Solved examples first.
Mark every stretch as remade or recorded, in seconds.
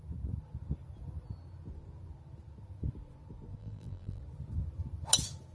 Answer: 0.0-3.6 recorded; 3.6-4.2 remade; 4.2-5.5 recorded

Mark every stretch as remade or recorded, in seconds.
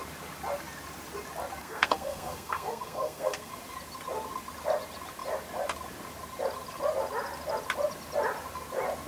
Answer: 0.0-1.6 recorded; 1.6-3.5 remade; 3.5-9.1 recorded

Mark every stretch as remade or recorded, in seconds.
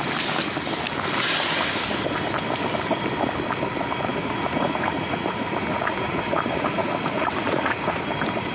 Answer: 0.0-4.2 recorded; 4.2-8.1 remade; 8.1-8.5 recorded